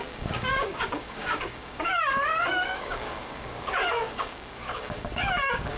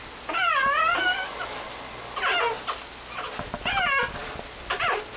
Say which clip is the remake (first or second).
first